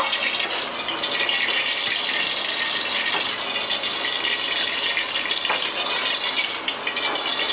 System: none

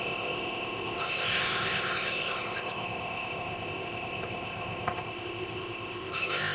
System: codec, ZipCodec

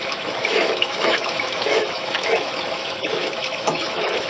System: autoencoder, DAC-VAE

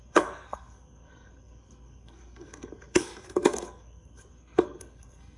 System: codec, SNAC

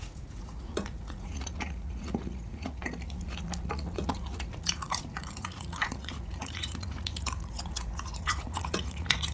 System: vocoder, Vocos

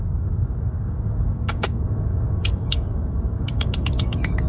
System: codec, DAC